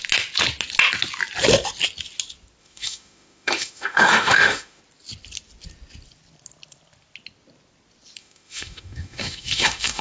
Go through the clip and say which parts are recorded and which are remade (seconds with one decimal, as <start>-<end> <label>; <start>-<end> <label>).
0.0-2.6 recorded; 2.6-4.8 remade; 4.8-8.2 recorded; 8.2-10.0 remade